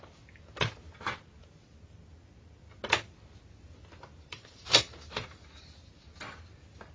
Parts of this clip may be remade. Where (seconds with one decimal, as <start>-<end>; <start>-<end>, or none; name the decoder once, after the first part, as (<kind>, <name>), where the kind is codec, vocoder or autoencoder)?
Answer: 4.1-5.4 (vocoder, BigVGAN v2)